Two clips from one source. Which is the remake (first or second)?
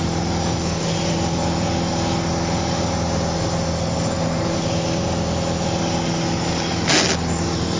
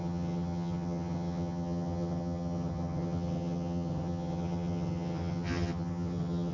second